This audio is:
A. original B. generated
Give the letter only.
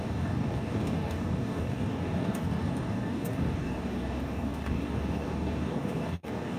B